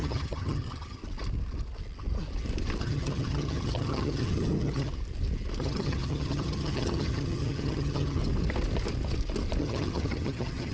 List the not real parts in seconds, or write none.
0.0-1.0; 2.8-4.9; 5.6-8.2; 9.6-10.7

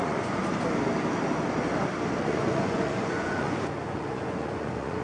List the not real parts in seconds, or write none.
0.0-0.4; 2.2-5.0

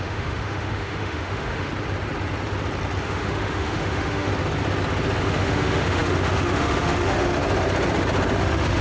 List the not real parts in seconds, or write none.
0.0-1.7; 3.0-4.3; 5.2-7.4; 8.4-8.8

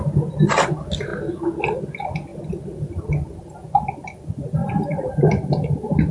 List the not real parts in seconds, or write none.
4.6-5.1